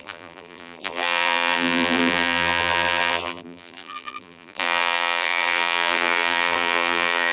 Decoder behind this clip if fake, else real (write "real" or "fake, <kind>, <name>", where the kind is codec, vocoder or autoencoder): fake, vocoder, BigVGAN v2